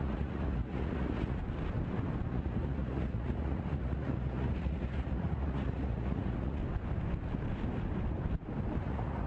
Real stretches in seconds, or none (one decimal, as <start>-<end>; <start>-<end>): 1.4-2.3; 6.6-8.8